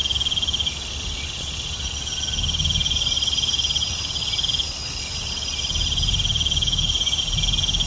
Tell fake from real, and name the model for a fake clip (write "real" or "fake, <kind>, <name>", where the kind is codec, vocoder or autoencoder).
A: real